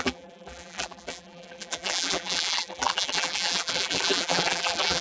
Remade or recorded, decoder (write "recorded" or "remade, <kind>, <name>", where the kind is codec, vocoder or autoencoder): remade, vocoder, BigVGAN v2